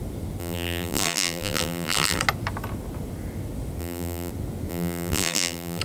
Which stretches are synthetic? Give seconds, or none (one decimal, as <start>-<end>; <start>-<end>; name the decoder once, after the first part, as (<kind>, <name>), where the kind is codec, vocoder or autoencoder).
0.4-2.2 (vocoder, BigVGAN v2); 3.8-4.3; 4.7-5.8